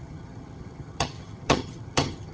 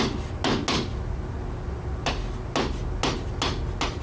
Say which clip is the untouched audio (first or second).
second